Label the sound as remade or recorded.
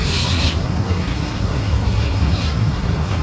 remade